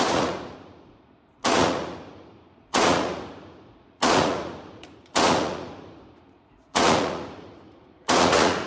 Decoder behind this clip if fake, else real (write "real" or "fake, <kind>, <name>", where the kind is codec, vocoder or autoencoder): fake, vocoder, Vocos